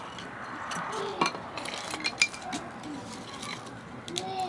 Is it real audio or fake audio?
real